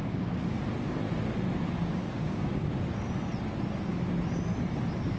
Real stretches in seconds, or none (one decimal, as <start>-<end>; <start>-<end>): 0.6-1.9; 2.7-5.2